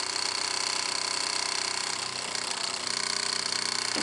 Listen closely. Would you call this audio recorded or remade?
recorded